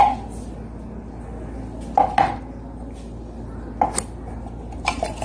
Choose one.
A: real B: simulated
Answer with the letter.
A